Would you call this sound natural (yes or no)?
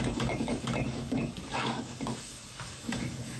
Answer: no